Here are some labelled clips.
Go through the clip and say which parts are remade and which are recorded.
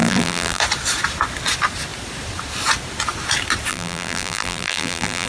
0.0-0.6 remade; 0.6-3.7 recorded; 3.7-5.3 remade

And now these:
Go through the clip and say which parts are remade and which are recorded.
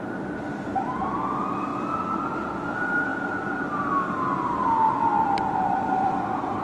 0.0-6.6 recorded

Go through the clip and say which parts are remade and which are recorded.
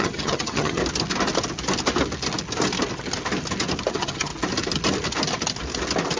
0.0-0.8 remade; 0.8-3.9 recorded; 3.9-4.3 remade; 4.3-6.2 recorded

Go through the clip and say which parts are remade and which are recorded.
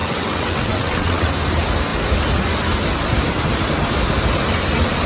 0.0-1.3 remade; 1.3-5.1 recorded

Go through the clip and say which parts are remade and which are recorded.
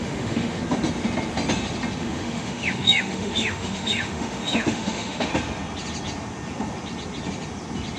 0.0-0.6 remade; 0.6-2.0 recorded; 2.0-5.3 remade; 5.3-8.0 recorded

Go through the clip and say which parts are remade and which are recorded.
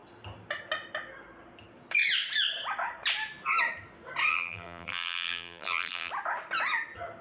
0.0-4.3 recorded; 4.3-6.1 remade; 6.1-7.2 recorded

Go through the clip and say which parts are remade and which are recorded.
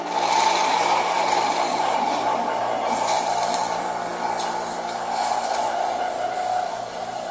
0.0-0.7 recorded; 0.7-2.6 remade; 2.6-7.3 recorded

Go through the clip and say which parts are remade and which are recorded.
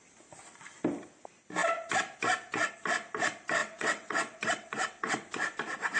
0.0-3.6 recorded; 3.6-5.3 remade; 5.3-6.0 recorded